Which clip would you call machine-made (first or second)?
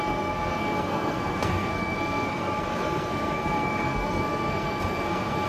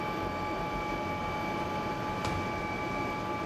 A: first